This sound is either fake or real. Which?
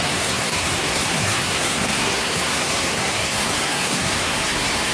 fake